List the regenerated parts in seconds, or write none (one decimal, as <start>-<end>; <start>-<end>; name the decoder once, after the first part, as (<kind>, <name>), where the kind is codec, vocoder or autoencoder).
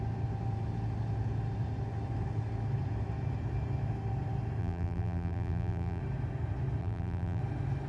4.6-6.0 (vocoder, BigVGAN v2); 6.8-7.4